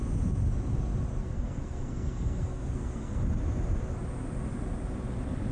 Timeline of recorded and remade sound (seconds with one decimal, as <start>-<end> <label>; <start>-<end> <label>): 0.0-1.2 recorded; 1.2-3.2 remade; 3.2-5.5 recorded